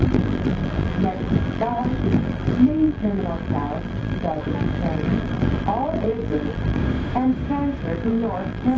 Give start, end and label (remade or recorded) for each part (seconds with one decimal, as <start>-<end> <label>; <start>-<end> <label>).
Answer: 0.0-6.8 remade; 6.8-7.8 recorded; 7.8-8.8 remade